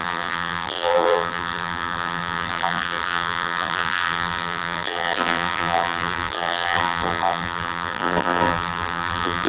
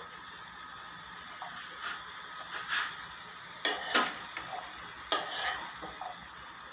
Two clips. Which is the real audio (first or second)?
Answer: second